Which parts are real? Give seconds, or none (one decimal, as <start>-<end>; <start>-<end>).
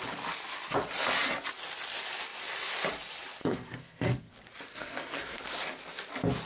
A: 0.0-3.4; 4.3-4.7; 5.4-6.5